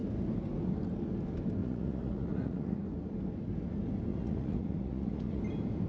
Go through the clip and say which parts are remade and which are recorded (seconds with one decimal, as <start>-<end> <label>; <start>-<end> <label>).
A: 0.0-1.6 recorded; 1.6-2.8 remade; 2.8-4.1 recorded; 4.1-5.4 remade; 5.4-5.9 recorded